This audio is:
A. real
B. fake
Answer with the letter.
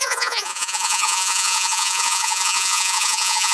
B